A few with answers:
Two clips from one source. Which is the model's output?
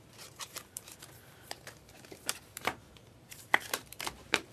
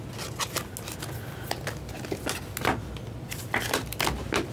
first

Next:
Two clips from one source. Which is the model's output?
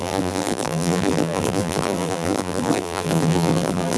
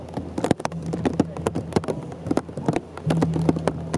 first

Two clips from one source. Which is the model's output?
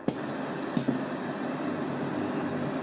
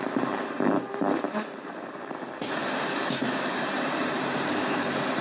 second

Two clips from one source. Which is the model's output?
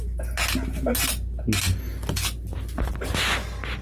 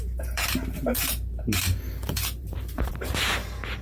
second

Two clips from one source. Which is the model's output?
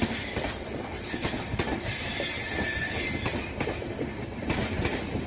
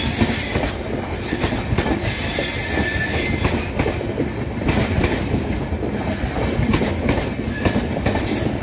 first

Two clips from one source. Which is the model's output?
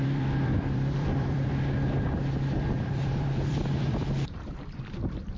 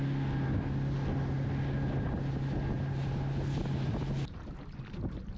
first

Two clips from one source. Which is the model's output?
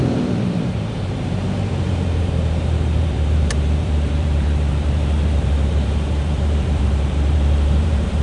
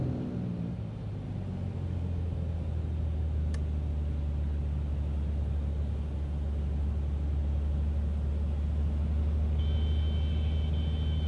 first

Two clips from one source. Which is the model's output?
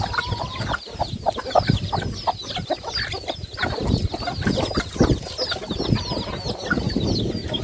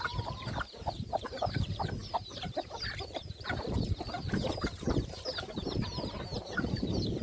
second